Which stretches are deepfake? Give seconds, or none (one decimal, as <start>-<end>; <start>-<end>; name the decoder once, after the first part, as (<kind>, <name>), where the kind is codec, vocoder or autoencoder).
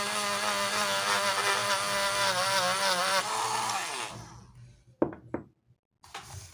none